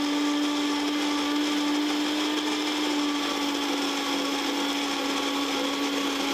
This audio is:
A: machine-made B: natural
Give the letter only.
B